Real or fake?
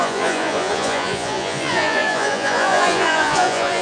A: fake